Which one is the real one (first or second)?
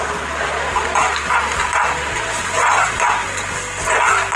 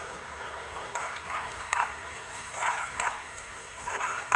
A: first